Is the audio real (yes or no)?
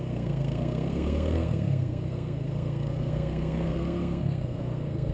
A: no